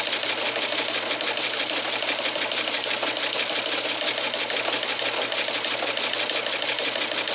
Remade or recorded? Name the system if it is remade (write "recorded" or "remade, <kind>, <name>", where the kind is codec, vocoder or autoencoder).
recorded